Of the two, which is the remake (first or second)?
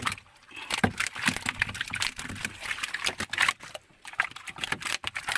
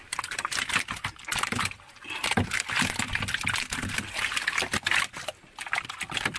first